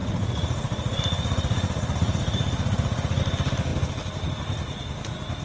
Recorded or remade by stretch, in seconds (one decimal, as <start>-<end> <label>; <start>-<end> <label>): 0.0-3.2 remade; 3.2-5.4 recorded